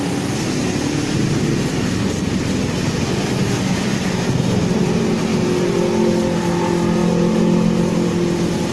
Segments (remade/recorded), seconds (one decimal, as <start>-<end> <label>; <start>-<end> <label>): 0.0-8.7 recorded